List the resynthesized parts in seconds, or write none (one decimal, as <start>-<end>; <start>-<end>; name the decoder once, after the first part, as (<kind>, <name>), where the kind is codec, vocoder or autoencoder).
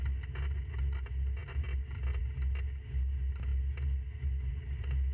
none